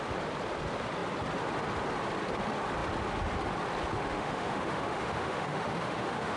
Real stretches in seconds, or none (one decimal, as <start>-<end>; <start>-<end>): 0.0-3.9